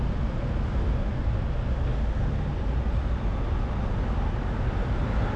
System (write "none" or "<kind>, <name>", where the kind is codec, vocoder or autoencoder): none